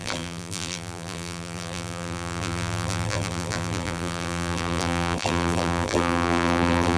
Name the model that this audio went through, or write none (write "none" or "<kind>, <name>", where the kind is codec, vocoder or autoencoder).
vocoder, BigVGAN v2